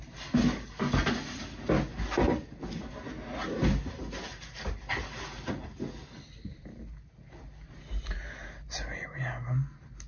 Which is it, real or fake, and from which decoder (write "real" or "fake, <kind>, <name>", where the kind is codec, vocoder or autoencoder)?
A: real